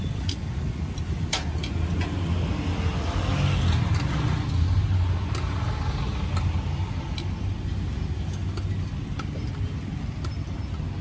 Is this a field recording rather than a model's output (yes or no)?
yes